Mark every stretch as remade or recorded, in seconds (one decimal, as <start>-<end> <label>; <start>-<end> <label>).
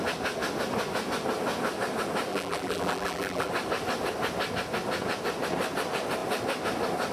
0.0-2.3 recorded; 2.3-3.5 remade; 3.5-7.1 recorded